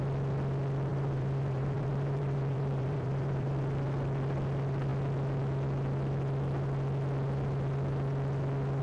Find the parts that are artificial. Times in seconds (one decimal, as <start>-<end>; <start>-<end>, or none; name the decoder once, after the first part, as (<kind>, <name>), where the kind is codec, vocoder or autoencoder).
0.9-3.6 (vocoder, BigVGAN v2)